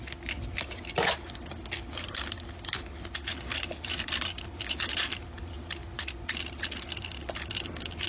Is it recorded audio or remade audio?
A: recorded